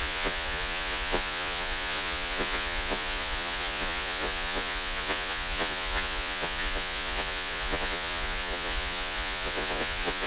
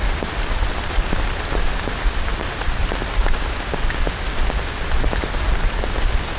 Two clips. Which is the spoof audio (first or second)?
first